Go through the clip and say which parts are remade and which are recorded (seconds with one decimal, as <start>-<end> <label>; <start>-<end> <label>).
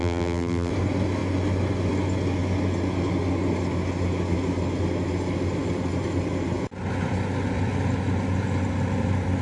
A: 0.0-0.7 remade; 0.7-9.4 recorded